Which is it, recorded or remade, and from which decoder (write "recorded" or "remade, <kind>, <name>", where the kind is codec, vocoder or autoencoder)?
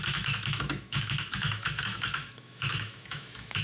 remade, autoencoder, DAC-VAE